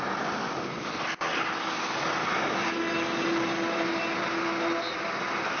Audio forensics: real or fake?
real